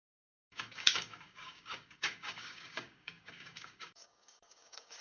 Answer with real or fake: fake